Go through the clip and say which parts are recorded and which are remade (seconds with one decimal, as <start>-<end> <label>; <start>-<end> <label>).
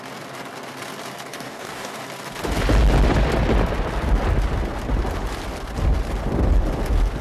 0.0-1.3 recorded; 1.3-2.0 remade; 2.0-7.2 recorded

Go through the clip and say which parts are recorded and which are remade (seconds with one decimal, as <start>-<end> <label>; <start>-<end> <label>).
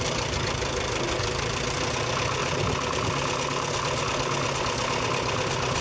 0.0-5.8 recorded